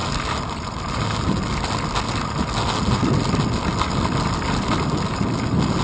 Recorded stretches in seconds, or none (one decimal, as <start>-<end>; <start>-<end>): 0.0-5.8